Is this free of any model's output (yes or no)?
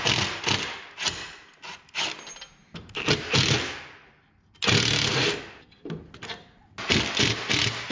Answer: yes